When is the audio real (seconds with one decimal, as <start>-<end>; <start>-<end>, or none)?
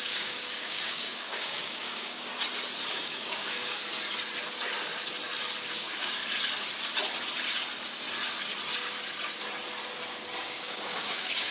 2.3-2.9; 3.8-5.7; 6.2-10.4